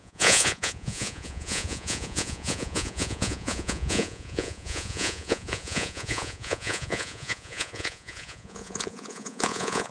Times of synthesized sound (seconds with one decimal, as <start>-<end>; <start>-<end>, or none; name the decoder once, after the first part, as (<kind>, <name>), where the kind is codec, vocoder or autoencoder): 0.0-9.9 (vocoder, Vocos)